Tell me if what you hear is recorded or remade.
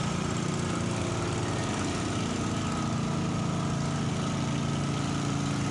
recorded